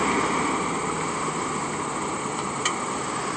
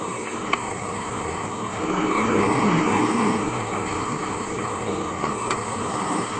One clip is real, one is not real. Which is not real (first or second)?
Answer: second